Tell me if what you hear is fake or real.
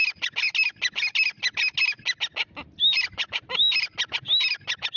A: real